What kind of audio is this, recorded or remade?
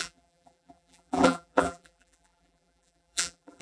remade